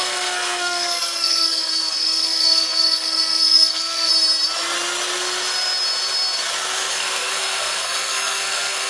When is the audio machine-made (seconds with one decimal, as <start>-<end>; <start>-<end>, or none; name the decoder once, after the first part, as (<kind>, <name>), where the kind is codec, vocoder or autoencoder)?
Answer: 0.0-4.1 (codec, SNAC); 6.9-8.9